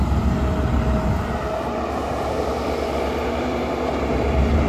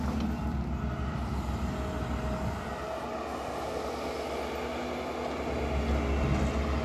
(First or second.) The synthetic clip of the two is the first